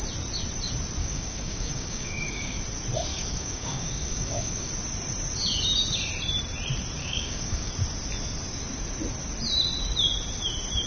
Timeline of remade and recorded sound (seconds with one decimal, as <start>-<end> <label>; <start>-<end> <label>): 0.0-1.0 recorded; 1.0-2.6 remade; 2.6-3.1 recorded; 3.1-4.7 remade; 4.7-7.0 recorded; 7.0-7.7 remade; 7.7-10.9 recorded